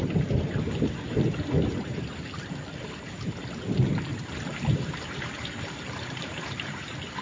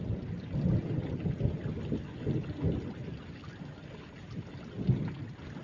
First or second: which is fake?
first